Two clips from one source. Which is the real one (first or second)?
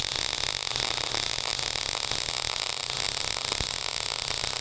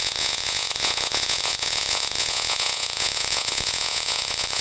first